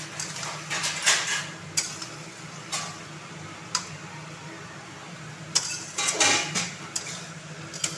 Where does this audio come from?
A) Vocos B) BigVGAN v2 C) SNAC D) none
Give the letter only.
D